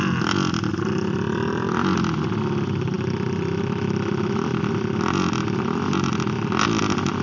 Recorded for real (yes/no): yes